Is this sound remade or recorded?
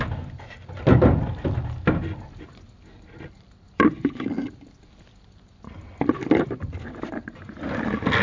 remade